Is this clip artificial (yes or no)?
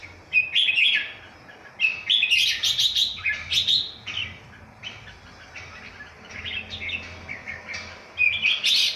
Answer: no